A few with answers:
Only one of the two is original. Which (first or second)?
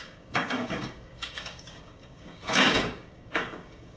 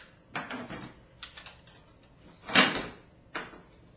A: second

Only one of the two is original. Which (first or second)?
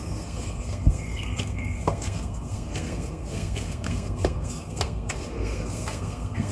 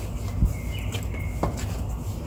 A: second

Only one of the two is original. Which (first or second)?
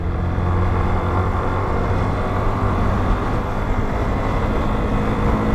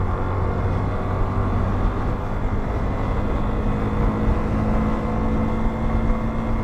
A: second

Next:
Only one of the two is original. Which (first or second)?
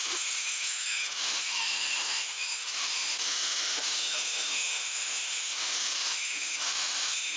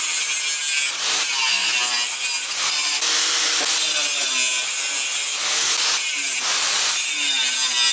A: second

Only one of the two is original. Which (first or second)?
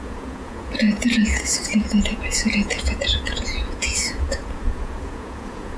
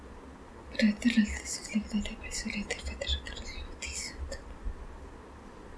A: second